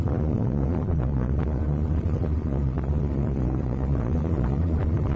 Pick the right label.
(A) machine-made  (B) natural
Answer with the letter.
A